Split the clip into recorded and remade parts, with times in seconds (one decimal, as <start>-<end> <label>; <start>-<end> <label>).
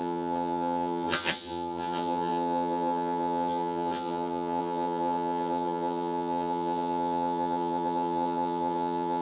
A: 0.0-9.2 remade